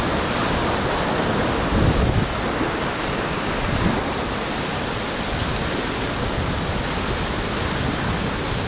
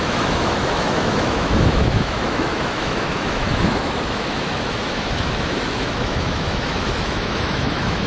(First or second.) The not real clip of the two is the second